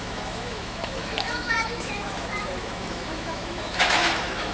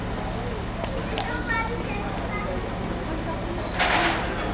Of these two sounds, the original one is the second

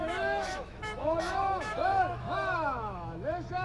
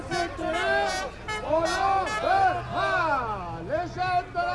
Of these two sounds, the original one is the second